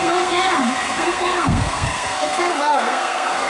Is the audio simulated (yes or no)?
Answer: yes